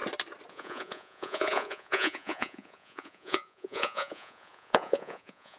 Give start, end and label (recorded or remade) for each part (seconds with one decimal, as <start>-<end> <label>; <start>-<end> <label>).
0.0-0.5 recorded; 0.5-5.6 remade